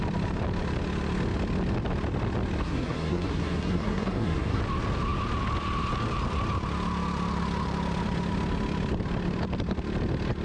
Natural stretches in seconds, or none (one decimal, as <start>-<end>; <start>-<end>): 0.0-2.6; 4.6-10.4